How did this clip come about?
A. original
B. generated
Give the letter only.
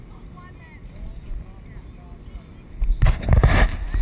A